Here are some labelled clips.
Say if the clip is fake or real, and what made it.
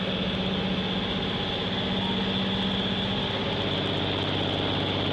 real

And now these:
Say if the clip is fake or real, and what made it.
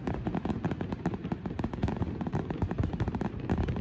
fake, vocoder, BigVGAN v2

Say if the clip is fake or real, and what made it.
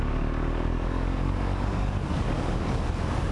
fake, codec, DAC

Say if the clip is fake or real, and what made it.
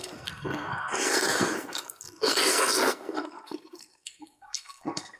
fake, codec, SNAC